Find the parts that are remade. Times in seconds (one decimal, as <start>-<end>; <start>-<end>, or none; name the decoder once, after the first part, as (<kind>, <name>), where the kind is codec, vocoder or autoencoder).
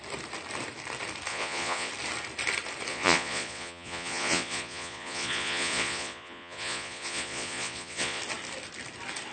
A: 1.3-1.9 (vocoder, Vocos); 2.9-8.2